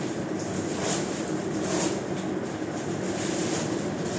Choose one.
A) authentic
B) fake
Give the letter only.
A